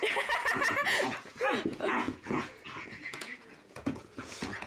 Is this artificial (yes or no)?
yes